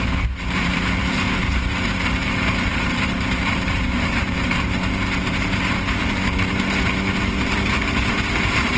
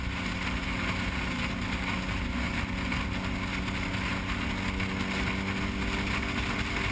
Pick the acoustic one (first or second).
second